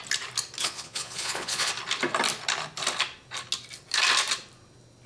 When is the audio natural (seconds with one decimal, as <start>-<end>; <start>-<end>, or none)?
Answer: 0.0-0.6; 1.7-5.1